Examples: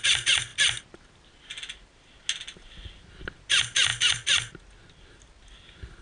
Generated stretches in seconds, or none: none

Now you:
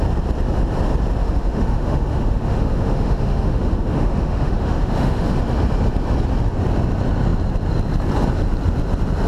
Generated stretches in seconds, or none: 1.2-5.3 (autoencoder, DAC-VAE)

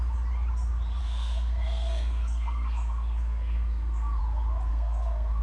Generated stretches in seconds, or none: 1.0-4.2 (codec, SNAC); 4.7-5.4